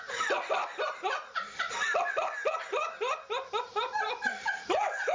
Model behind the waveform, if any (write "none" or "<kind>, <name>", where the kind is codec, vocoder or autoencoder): vocoder, BigVGAN v2